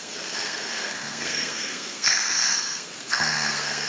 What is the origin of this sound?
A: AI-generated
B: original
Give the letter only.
A